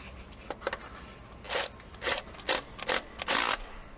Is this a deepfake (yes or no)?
no